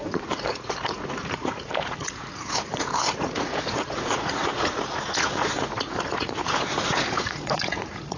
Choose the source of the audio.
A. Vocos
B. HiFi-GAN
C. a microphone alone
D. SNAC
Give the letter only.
A